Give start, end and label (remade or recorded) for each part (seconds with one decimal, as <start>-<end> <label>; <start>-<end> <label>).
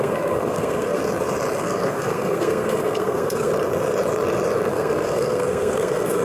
0.0-1.0 remade; 1.0-1.6 recorded; 1.6-3.5 remade; 3.5-4.7 recorded; 4.7-6.2 remade